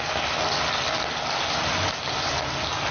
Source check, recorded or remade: recorded